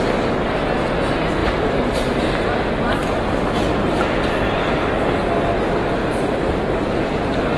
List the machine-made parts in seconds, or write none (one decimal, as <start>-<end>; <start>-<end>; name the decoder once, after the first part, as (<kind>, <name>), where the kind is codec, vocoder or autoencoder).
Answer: 1.4-2.2 (vocoder, BigVGAN v2); 3.0-5.1; 6.0-7.6